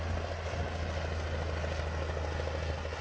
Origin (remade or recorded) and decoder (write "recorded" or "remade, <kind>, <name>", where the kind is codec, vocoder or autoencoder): recorded